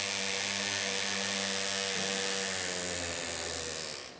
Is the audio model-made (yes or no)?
no